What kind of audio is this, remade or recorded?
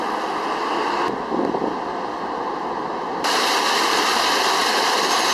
recorded